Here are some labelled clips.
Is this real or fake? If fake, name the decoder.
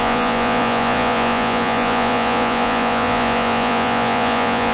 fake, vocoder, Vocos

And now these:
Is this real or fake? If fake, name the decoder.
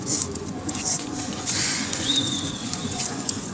fake, vocoder, Vocos